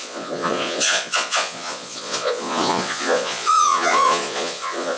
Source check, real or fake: fake